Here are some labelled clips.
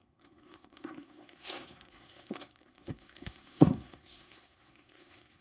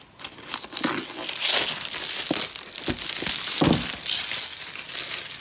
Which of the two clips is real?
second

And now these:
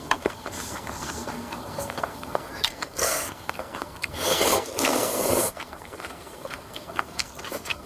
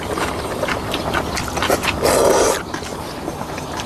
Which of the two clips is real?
second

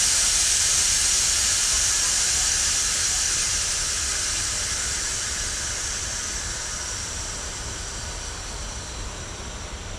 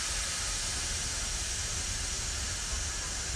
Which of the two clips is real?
second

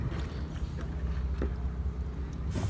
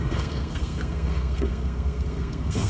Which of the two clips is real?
first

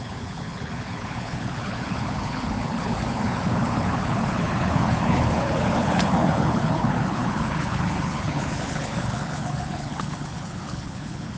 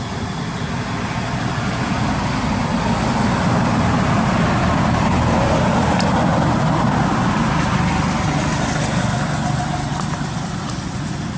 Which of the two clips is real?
second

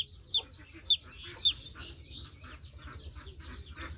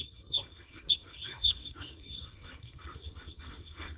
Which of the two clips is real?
first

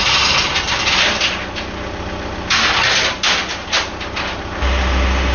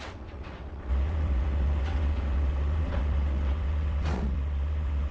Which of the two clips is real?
first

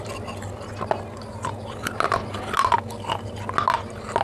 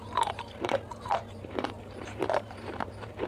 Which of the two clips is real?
first